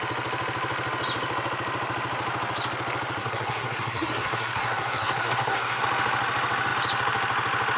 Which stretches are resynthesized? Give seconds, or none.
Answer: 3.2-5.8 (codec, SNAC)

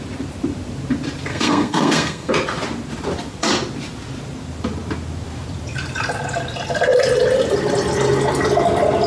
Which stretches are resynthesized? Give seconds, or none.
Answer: 1.3-2.3 (codec, SNAC)